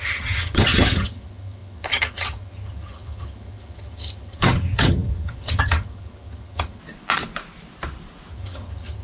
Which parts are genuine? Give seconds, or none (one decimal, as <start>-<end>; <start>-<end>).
6.8-8.3